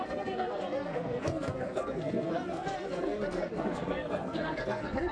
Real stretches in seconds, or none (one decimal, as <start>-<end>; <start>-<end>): none